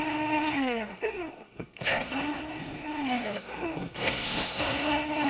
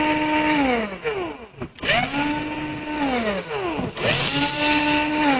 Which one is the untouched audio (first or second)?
second